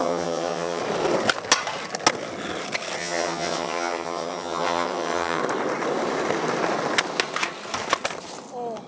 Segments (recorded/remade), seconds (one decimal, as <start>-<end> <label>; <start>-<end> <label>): 0.0-0.8 remade; 0.8-3.0 recorded; 3.0-5.4 remade; 5.4-8.9 recorded

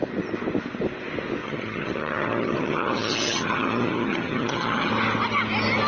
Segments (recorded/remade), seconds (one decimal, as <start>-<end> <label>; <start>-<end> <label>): 0.0-1.4 recorded; 1.4-4.9 remade; 4.9-5.9 recorded

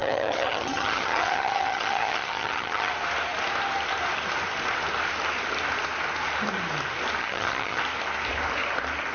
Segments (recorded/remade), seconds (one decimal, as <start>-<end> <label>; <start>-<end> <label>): 0.0-2.9 remade; 2.9-7.2 recorded; 7.2-7.8 remade; 7.8-9.1 recorded

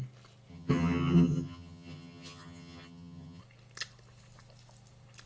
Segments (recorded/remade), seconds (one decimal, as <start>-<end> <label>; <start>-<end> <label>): 0.0-0.5 recorded; 0.5-3.4 remade; 3.4-5.3 recorded

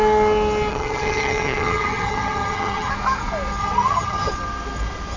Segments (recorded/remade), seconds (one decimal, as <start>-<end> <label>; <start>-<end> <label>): 0.0-0.7 recorded; 0.7-2.9 remade; 2.9-3.6 recorded; 3.6-4.3 remade; 4.3-5.2 recorded

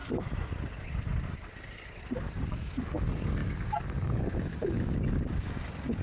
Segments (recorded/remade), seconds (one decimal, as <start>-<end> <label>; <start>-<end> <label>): 0.0-6.0 recorded

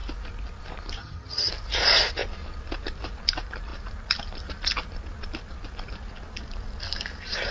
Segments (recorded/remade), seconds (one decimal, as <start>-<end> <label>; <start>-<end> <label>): 0.0-1.0 recorded; 1.0-1.5 remade; 1.5-7.5 recorded